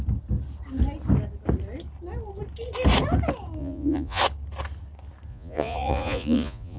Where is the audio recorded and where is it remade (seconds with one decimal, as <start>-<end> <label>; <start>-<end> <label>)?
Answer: 0.0-3.6 recorded; 3.6-4.2 remade; 4.2-5.3 recorded; 5.3-6.8 remade